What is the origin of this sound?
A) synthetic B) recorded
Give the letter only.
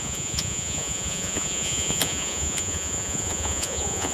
A